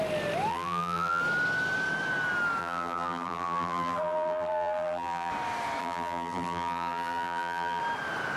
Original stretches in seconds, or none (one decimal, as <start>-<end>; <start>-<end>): 0.0-0.5; 1.2-2.6; 5.3-5.8; 7.8-8.4

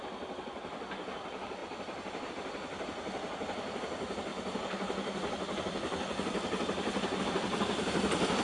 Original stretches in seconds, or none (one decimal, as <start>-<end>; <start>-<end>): 0.0-8.4